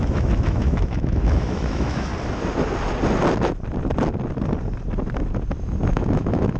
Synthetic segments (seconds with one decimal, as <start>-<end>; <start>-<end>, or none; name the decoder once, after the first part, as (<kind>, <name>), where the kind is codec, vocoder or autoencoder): 0.0-2.1 (autoencoder, DAC-VAE); 5.9-6.6

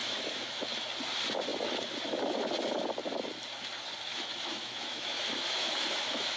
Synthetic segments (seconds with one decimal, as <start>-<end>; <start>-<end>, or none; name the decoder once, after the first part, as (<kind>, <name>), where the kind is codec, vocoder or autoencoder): 0.0-0.6 (autoencoder, DAC-VAE); 4.1-6.4

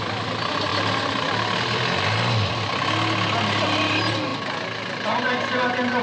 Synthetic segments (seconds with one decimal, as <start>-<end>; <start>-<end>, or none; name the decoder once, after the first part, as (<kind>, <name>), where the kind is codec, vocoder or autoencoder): none

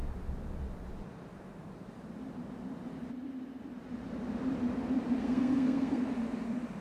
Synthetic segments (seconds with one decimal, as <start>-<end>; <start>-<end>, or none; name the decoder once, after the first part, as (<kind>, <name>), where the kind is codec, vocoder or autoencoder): 5.2-6.0 (codec, SNAC)

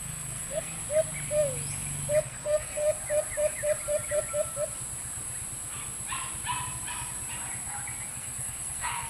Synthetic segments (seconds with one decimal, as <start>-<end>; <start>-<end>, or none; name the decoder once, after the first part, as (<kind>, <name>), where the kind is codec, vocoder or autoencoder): 0.0-0.8 (codec, SNAC); 2.2-2.8; 8.1-9.1

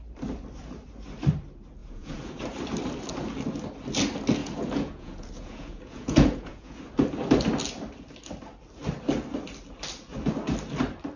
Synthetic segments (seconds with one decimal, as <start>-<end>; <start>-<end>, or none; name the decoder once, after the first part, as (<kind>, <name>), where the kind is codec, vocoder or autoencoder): 1.8-2.4 (vocoder, Vocos); 4.4-6.8